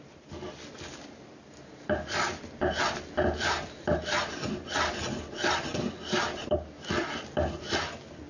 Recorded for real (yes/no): yes